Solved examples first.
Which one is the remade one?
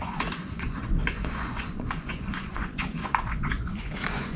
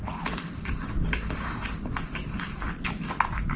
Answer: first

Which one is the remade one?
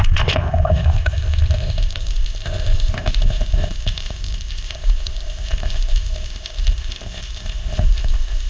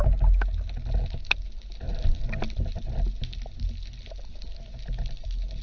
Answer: first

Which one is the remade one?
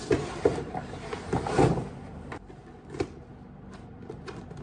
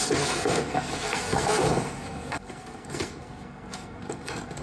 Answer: second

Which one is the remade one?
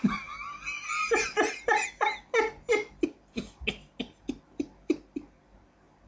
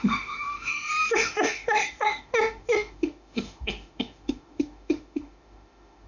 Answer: second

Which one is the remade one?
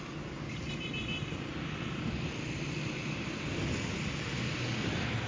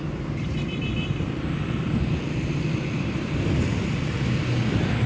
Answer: second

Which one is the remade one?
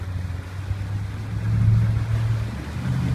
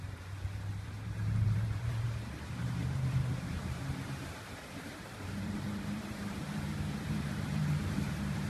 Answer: second